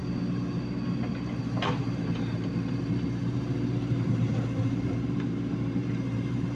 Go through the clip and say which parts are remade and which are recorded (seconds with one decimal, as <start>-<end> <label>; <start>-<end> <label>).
0.0-1.1 recorded; 1.1-6.6 remade